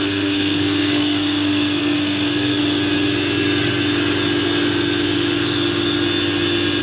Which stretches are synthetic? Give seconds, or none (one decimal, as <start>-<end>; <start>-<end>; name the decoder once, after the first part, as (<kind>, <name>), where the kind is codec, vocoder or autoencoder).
0.0-2.6 (codec, SNAC)